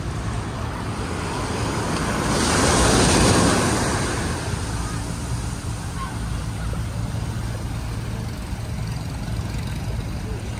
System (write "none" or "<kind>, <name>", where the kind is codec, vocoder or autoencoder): none